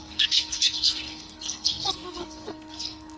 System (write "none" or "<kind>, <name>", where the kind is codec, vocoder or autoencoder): codec, SNAC